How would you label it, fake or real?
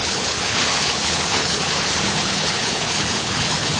fake